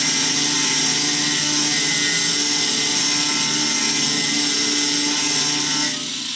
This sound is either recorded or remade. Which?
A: recorded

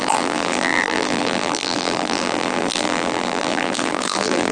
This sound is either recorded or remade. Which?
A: remade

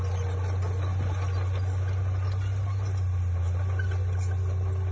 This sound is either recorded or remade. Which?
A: recorded